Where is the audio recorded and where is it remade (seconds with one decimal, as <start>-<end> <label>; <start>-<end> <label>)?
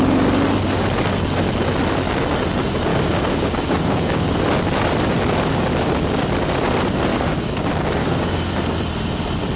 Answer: 0.0-2.9 recorded; 2.9-4.4 remade; 4.4-7.1 recorded; 7.1-7.6 remade; 7.6-8.0 recorded; 8.0-8.5 remade; 8.5-9.6 recorded